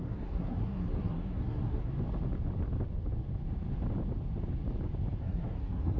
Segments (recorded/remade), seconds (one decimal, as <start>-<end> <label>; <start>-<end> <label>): 0.0-1.9 remade; 1.9-5.2 recorded; 5.2-6.0 remade